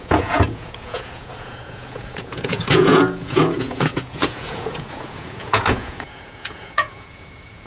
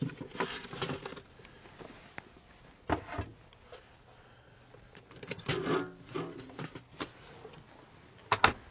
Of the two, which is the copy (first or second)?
first